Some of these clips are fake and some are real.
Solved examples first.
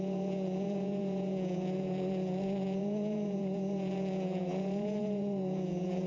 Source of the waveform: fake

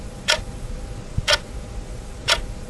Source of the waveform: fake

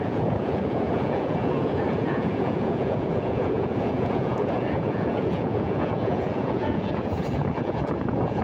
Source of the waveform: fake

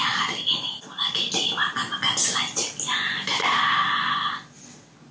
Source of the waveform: real